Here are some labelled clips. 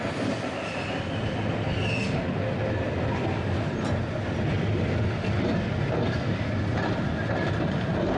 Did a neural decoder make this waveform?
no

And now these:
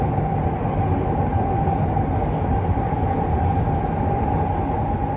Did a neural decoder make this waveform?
no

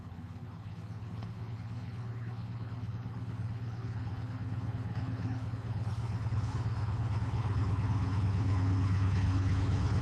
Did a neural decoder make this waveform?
yes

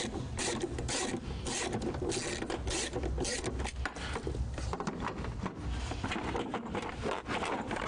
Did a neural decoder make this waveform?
no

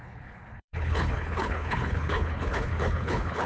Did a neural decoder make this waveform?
yes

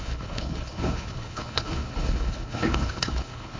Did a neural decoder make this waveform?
yes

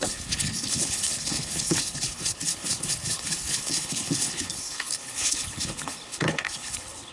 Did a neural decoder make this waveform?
yes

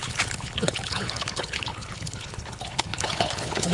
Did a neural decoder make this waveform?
yes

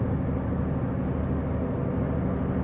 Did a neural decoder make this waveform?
no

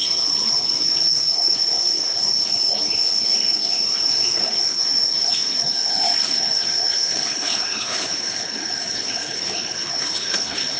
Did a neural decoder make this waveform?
yes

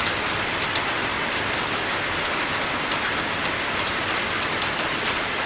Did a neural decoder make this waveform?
no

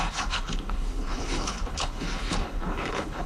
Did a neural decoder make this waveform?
yes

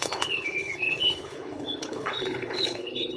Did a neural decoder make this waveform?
yes